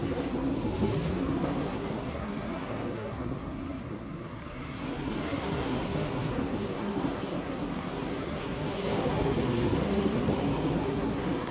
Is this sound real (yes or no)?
no